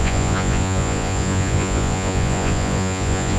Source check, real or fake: fake